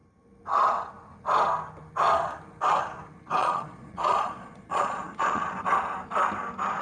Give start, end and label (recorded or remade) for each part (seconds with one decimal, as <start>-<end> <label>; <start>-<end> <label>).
0.0-3.4 recorded; 3.4-5.4 remade; 5.4-6.8 recorded